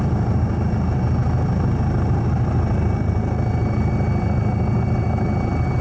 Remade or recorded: recorded